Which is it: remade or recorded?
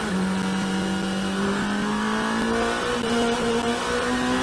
recorded